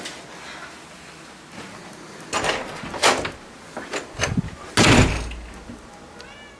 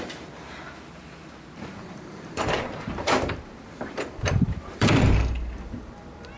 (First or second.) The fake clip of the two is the second